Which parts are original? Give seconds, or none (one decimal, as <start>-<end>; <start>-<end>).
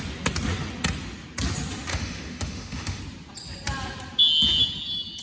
0.0-1.9; 3.0-5.2